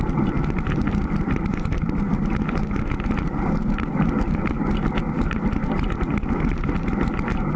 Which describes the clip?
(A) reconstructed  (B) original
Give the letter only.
B